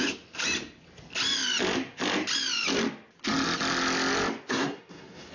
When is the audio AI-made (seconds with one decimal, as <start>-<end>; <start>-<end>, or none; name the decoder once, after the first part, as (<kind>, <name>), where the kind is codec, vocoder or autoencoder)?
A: 4.5-5.3 (codec, SNAC)

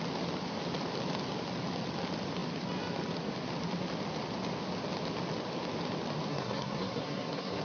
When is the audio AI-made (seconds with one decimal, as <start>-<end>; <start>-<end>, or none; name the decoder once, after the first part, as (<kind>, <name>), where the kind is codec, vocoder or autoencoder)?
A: 6.3-7.6 (codec, SNAC)

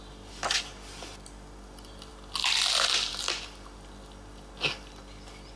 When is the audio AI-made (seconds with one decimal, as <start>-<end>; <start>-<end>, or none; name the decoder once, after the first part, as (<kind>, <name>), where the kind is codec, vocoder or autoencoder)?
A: none

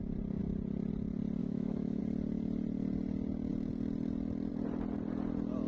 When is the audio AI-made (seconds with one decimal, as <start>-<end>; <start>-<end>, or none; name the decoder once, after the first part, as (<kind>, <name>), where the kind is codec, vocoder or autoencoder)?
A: 1.4-2.0 (autoencoder, DAC-VAE)